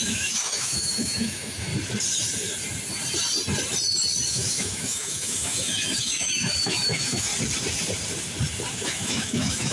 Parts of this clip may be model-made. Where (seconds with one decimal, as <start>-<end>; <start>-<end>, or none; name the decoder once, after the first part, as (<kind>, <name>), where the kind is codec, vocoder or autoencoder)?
0.0-1.7 (autoencoder, DAC-VAE); 4.3-7.3; 8.7-9.7